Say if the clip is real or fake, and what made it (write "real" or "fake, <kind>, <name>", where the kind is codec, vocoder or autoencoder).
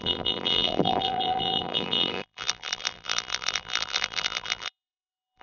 fake, vocoder, BigVGAN v2